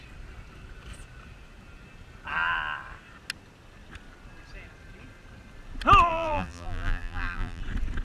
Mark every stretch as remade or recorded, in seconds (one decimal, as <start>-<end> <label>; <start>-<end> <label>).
0.0-6.1 recorded; 6.1-7.6 remade; 7.6-8.0 recorded